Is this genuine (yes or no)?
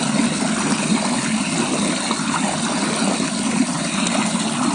yes